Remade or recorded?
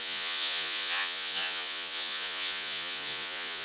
remade